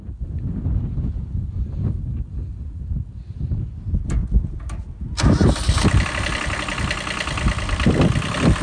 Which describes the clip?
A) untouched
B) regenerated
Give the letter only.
A